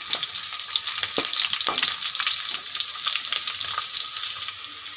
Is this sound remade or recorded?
recorded